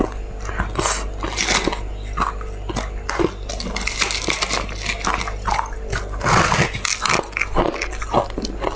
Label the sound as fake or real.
real